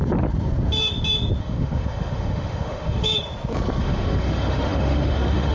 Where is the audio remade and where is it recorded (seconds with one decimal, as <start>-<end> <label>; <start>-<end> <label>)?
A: 0.0-1.4 recorded; 1.4-3.0 remade; 3.0-3.8 recorded; 3.8-5.5 remade